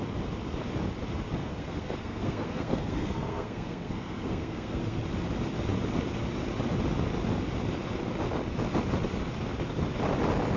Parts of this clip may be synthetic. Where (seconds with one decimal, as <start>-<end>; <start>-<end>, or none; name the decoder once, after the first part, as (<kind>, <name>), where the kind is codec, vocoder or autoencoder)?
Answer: 1.4-5.0 (codec, SNAC)